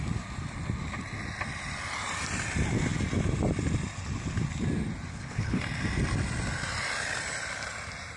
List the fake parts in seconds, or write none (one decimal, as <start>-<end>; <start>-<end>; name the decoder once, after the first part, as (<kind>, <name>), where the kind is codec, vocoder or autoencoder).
5.1-5.6 (codec, HILCodec)